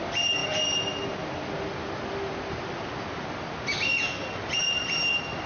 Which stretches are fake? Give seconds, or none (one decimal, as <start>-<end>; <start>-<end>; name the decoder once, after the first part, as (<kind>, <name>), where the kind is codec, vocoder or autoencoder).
none